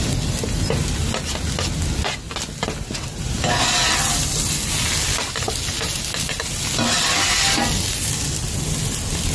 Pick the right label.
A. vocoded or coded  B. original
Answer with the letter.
B